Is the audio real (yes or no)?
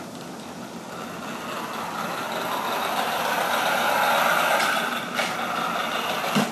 yes